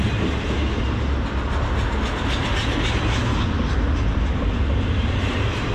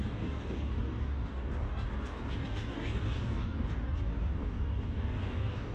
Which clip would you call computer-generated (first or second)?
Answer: second